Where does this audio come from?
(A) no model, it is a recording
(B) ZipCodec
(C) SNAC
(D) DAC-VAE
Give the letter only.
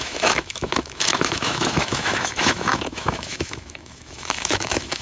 D